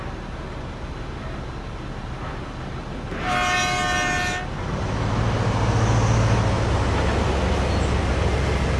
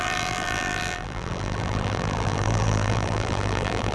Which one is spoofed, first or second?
second